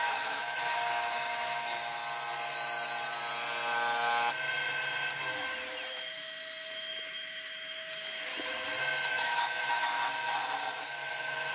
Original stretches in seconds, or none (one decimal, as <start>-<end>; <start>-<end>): 2.0-5.9; 8.3-9.1; 10.0-10.8